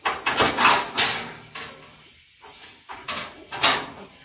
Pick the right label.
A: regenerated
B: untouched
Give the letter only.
B